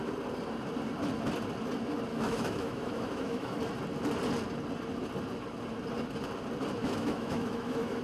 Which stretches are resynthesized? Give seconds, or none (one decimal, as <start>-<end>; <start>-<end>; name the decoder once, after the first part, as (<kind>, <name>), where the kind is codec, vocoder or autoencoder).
2.1-3.6 (autoencoder, DAC-VAE); 6.8-8.0